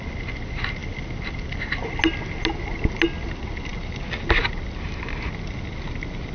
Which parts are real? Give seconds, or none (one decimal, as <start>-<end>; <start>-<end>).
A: 0.0-6.3